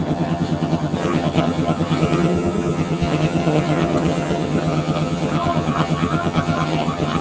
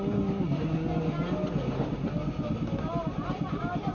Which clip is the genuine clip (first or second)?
second